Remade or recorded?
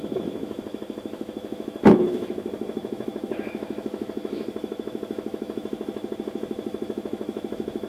remade